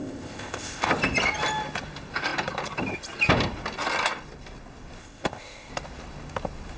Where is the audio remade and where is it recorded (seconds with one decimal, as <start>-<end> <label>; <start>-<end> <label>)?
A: 0.0-0.9 remade; 0.9-5.0 recorded; 5.0-5.7 remade; 5.7-6.8 recorded